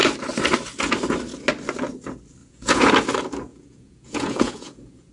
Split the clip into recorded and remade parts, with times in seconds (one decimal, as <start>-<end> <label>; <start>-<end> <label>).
0.0-2.4 recorded; 2.4-2.9 remade; 2.9-3.5 recorded; 3.5-5.1 remade